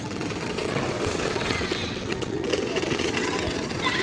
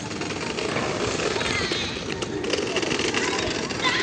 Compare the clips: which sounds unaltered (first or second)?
second